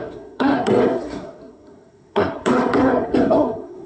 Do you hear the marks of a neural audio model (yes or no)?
yes